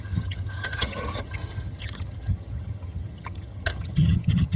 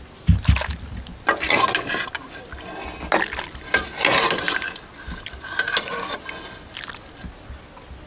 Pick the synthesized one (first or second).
first